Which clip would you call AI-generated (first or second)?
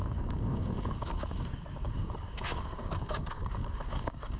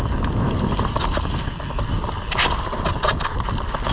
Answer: first